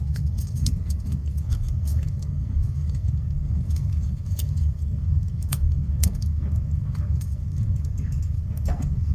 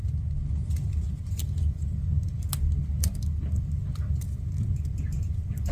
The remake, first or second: first